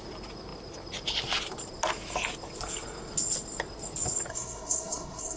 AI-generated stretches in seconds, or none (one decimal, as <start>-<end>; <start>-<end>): 4.3-5.4